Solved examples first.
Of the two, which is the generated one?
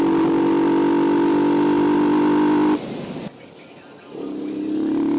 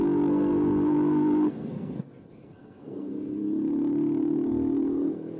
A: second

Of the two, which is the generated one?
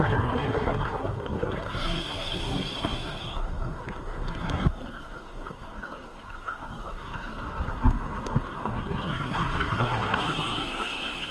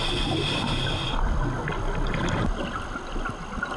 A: first